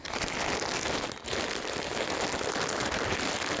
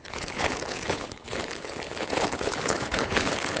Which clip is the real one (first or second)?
first